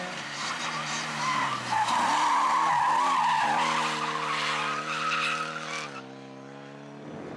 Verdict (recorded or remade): remade